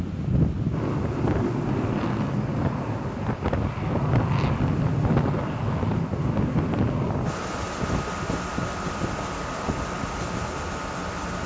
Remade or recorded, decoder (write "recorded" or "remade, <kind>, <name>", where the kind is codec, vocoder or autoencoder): recorded